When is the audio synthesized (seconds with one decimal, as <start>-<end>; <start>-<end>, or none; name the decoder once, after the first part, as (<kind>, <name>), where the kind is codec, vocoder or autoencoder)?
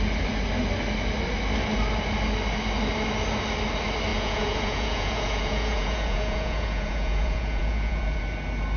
4.1-8.2 (vocoder, Vocos)